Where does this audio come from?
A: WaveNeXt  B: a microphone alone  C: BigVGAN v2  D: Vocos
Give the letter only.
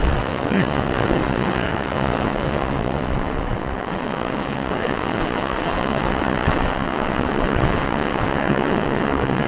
A